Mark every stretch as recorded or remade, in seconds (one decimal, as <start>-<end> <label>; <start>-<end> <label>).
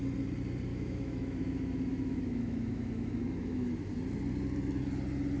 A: 0.0-0.7 recorded; 0.7-3.9 remade; 3.9-5.4 recorded